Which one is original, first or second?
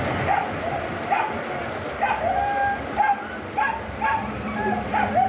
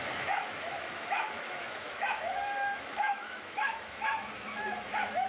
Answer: first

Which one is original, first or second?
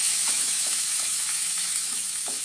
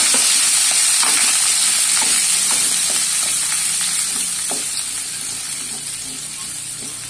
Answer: second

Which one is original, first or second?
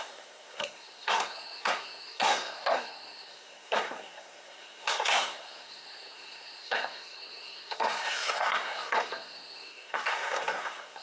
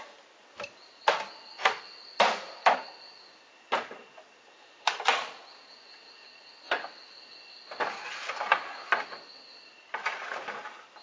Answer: second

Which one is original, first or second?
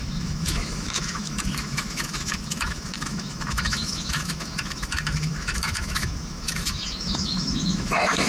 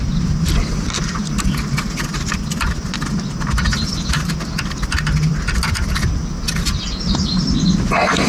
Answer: second